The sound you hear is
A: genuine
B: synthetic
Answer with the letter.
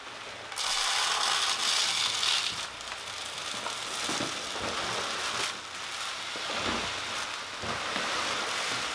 A